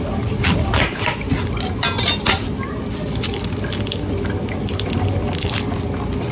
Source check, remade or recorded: recorded